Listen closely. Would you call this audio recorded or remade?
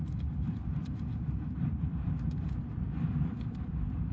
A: remade